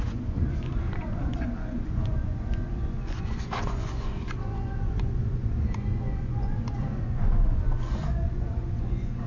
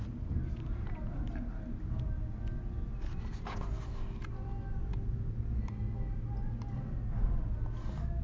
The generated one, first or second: first